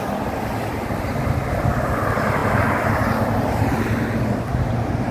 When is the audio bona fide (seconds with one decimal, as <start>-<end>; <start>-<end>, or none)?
2.4-4.5